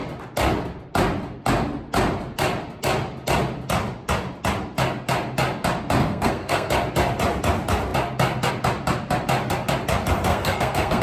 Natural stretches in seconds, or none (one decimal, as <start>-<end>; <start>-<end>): 0.0-6.0; 6.7-10.3